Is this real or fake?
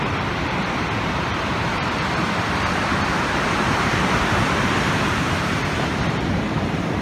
fake